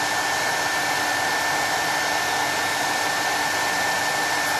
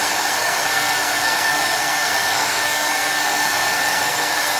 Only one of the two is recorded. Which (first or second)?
first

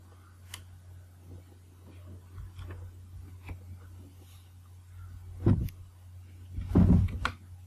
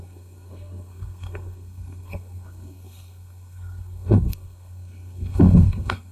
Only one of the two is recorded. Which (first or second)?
first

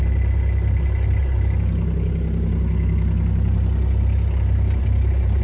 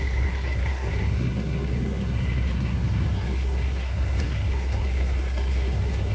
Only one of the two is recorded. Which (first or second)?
first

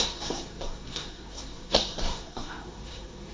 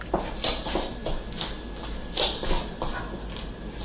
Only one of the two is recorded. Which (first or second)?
second